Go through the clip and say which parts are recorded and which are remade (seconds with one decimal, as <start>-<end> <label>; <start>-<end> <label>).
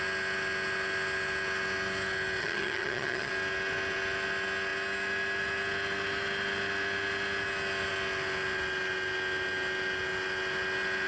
0.0-2.4 recorded; 2.4-3.3 remade; 3.3-11.1 recorded